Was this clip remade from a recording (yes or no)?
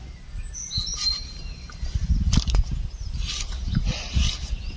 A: no